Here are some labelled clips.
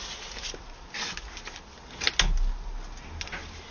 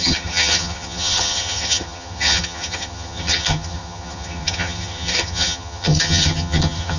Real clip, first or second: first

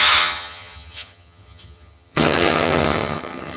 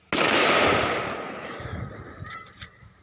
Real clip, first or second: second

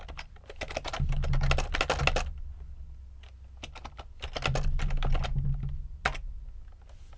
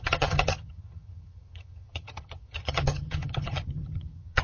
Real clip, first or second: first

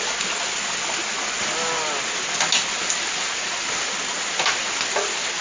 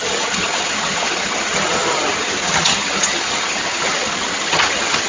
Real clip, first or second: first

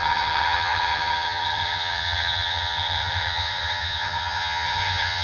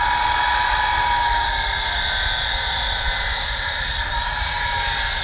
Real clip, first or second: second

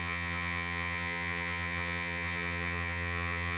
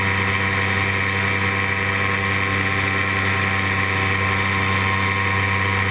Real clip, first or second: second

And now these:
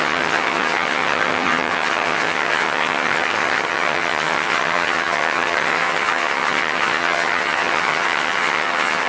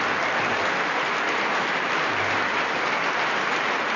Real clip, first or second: second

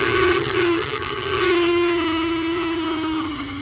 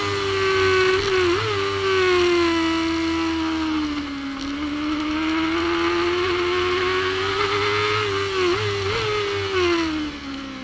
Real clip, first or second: second